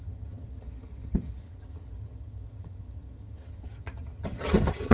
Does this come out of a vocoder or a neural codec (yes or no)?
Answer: yes